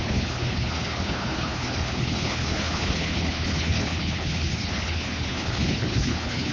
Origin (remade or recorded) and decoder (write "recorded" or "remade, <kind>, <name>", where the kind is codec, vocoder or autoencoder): remade, codec, HILCodec